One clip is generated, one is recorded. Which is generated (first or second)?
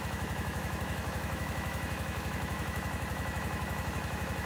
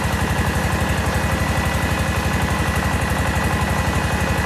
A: first